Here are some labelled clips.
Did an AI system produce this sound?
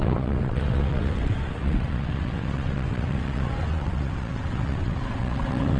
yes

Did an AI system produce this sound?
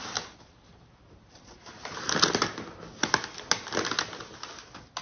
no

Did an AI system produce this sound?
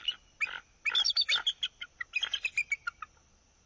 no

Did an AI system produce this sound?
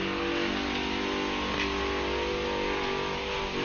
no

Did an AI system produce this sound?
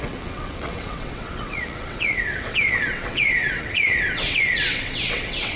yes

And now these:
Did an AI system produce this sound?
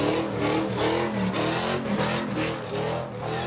no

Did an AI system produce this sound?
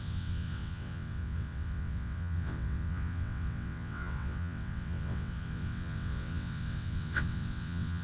yes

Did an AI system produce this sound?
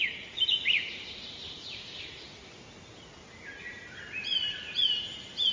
no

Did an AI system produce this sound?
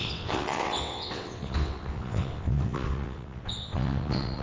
yes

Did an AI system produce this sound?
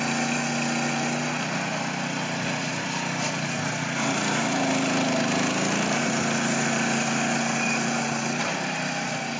no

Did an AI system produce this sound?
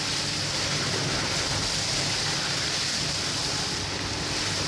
no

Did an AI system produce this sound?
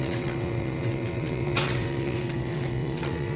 yes